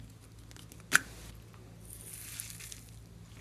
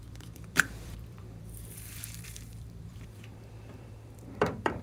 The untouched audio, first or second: first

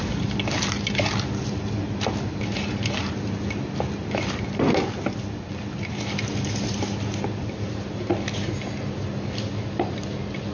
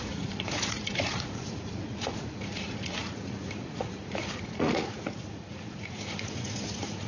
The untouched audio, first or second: first